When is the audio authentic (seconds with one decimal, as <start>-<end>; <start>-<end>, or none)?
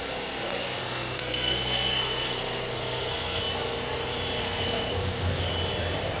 0.0-0.8; 3.4-4.4; 5.5-6.2